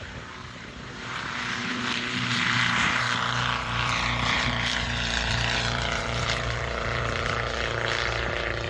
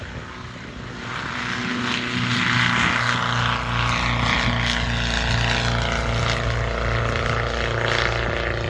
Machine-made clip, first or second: first